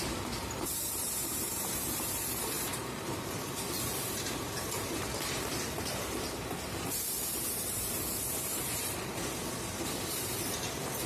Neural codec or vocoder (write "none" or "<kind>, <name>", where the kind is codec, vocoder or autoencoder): vocoder, BigVGAN v2